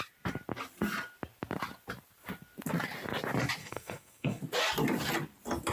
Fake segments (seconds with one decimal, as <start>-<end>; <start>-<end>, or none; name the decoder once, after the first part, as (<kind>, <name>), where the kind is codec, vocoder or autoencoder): 3.6-4.4 (codec, SNAC)